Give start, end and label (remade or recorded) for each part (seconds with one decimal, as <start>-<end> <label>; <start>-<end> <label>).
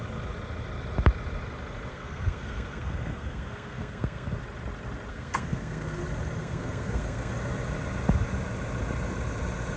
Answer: 0.0-1.9 recorded; 1.9-4.4 remade; 4.4-5.1 recorded; 5.1-6.0 remade; 6.0-6.4 recorded; 6.4-7.3 remade; 7.3-9.8 recorded